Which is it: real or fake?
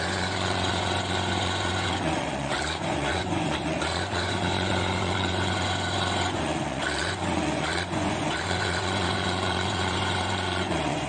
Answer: fake